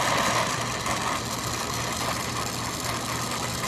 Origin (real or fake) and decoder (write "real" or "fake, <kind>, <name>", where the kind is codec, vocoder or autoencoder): real